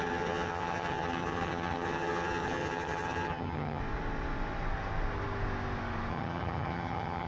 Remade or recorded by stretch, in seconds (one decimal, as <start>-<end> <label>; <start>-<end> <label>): 0.0-3.8 remade; 3.8-6.1 recorded; 6.1-7.3 remade